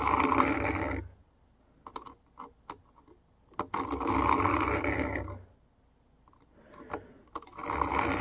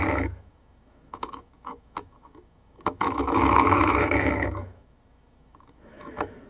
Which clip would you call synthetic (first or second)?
second